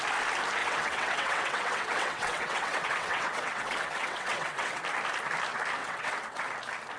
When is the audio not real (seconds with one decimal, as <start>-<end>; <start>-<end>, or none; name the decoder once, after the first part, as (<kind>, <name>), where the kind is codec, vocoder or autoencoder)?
0.6-4.8 (vocoder, WaveNeXt); 5.8-6.5

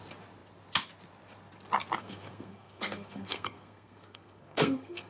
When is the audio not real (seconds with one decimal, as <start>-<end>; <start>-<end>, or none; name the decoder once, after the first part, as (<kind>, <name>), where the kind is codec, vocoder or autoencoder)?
2.0-5.1 (codec, SNAC)